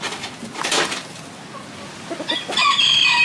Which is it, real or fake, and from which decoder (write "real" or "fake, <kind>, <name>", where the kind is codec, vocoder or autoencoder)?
real